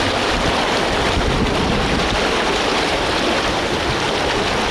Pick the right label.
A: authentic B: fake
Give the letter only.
A